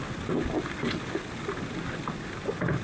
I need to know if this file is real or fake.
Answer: real